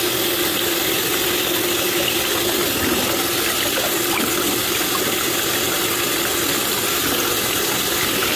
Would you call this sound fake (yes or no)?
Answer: no